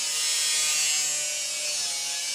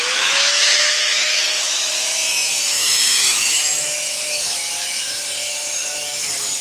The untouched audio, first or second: first